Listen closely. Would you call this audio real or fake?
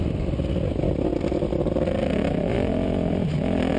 real